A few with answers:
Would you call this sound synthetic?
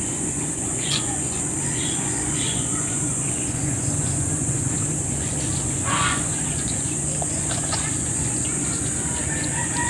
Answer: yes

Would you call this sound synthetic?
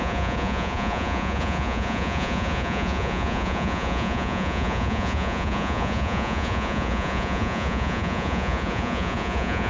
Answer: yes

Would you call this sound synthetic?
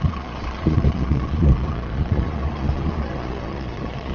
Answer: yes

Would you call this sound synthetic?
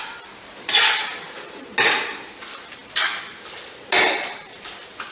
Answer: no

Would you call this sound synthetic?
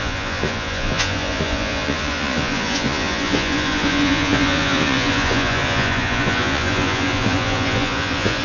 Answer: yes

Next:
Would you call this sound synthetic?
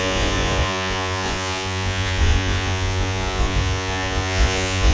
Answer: yes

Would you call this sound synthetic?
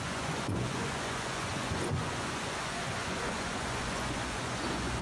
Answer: yes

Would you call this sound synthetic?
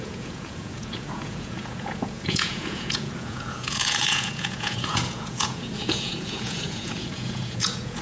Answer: yes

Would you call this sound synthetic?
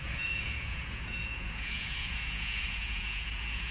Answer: yes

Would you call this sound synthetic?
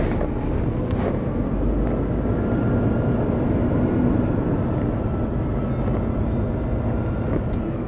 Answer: no